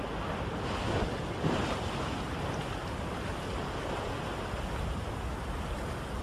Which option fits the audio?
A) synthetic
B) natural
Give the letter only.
B